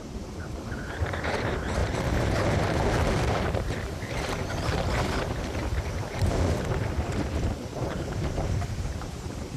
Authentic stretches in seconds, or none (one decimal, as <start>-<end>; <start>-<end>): 7.1-7.7